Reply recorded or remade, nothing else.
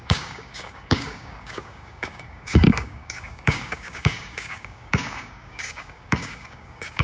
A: remade